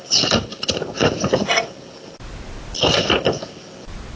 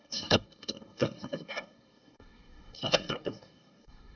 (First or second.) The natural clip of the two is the first